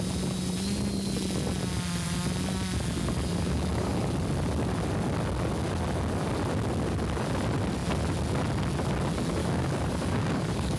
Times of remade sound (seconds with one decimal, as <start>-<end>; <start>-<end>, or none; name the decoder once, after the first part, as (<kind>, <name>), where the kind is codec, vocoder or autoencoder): 3.3-3.9 (codec, DAC); 9.4-10.8